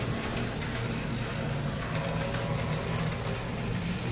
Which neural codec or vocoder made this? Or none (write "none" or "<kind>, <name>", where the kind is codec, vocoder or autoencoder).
none